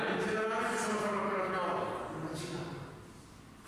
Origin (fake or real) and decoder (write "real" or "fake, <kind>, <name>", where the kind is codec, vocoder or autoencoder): real